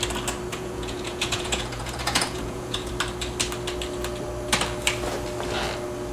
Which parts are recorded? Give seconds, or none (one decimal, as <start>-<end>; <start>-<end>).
0.0-0.5; 2.9-6.1